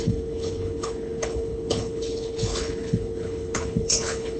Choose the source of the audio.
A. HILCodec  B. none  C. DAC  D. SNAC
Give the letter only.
A